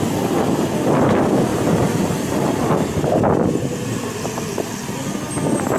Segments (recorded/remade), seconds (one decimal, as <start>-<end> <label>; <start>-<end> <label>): 0.0-5.8 recorded